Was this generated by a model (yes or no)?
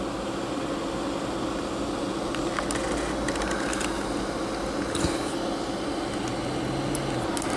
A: no